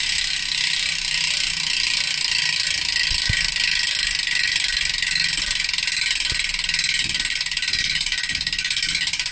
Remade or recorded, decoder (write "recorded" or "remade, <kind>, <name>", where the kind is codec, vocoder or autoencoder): recorded